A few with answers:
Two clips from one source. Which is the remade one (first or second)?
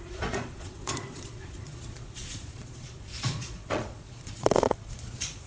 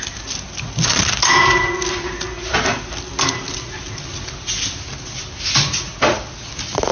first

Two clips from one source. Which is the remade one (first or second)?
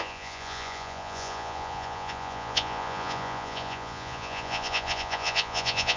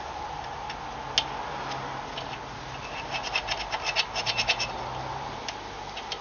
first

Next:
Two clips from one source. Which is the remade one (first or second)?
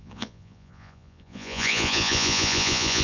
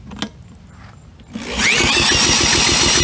first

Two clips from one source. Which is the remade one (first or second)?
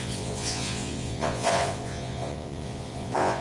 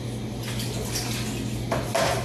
first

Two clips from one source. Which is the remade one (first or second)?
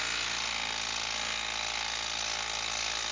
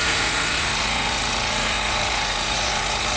second